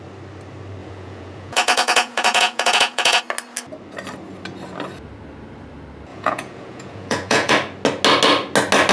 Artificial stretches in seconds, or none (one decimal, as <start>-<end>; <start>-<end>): 0.8-3.2; 6.1-7.5